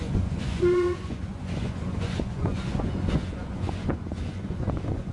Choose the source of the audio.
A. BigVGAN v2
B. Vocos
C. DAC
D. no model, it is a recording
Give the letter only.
B